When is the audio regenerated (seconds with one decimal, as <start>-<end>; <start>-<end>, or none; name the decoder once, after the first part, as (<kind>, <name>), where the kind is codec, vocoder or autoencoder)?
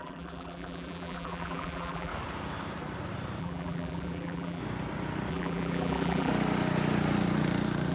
0.0-2.1 (vocoder, BigVGAN v2); 3.4-4.6; 5.3-6.3